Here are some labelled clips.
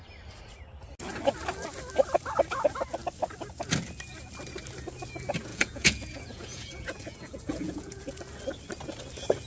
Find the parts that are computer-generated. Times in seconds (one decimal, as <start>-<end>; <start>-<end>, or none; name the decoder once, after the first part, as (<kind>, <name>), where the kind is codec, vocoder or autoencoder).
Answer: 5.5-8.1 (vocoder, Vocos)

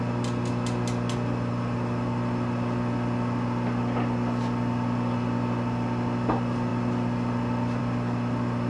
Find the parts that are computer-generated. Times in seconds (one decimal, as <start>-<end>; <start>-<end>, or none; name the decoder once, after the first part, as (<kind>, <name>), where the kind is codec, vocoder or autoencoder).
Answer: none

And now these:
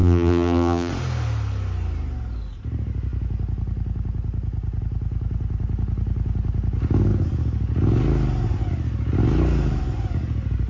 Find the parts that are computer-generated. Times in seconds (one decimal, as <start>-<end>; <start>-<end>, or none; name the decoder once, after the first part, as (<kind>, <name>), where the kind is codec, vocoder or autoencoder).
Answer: 0.0-0.9 (vocoder, BigVGAN v2)

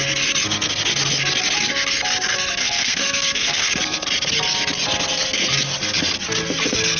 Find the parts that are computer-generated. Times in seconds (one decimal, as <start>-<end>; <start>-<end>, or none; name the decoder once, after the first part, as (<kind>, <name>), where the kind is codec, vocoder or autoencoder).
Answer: 2.6-3.7 (codec, SNAC)

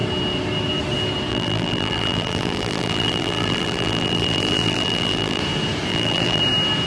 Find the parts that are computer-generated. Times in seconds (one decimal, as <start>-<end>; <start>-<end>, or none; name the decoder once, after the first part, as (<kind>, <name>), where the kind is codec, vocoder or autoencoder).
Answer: 1.3-5.4 (vocoder, BigVGAN v2); 5.9-6.4